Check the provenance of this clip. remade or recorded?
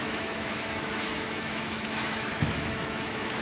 remade